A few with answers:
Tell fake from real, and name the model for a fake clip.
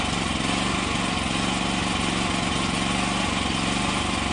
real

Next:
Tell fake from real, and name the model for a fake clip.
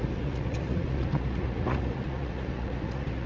fake, vocoder, Vocos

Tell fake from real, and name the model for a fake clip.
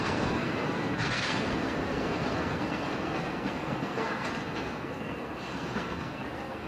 fake, codec, SNAC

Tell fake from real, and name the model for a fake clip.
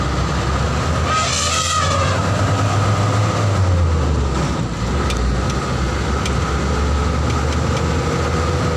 real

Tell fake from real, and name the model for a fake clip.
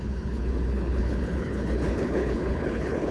fake, codec, HILCodec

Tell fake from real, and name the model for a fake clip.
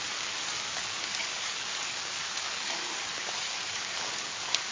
fake, codec, DAC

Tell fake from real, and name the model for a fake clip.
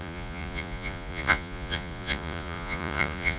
fake, vocoder, Vocos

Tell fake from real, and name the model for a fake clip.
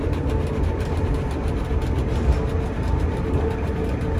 real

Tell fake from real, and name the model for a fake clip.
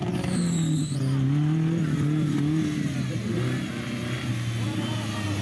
real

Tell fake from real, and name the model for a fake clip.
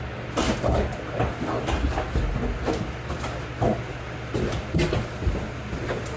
real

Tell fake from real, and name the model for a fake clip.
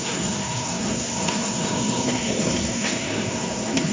fake, codec, SNAC